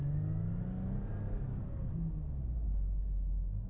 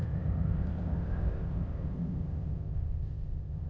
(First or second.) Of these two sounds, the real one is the first